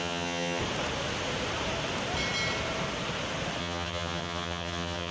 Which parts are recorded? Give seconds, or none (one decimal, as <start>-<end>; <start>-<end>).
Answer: 0.6-3.6